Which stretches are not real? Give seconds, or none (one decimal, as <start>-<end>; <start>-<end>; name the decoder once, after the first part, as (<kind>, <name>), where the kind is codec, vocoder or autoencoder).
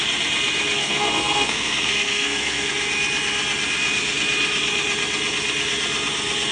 0.8-2.7 (codec, SNAC)